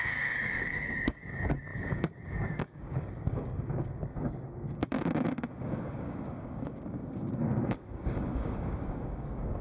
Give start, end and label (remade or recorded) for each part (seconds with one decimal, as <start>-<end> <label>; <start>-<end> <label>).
0.0-9.6 remade